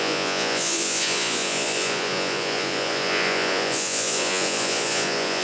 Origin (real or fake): fake